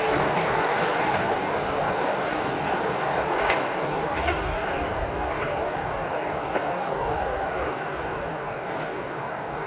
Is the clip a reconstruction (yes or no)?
yes